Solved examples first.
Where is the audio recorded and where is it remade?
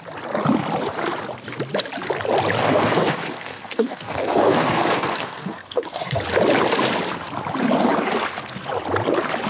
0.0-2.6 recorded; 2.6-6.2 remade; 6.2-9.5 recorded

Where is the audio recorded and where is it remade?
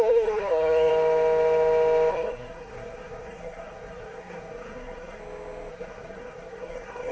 0.0-0.9 remade; 0.9-2.1 recorded; 2.1-5.2 remade; 5.2-5.7 recorded; 5.7-7.1 remade